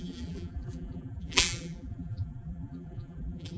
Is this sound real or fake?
fake